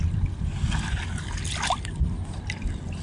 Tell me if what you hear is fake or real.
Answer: real